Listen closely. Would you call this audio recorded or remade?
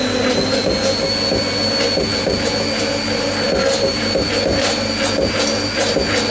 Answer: recorded